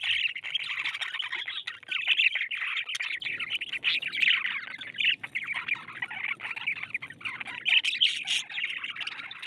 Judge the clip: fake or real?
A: real